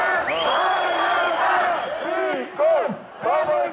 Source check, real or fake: real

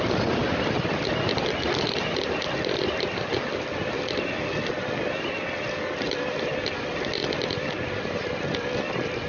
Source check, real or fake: real